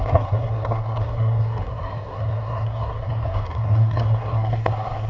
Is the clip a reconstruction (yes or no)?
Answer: yes